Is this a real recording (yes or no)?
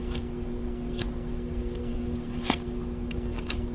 no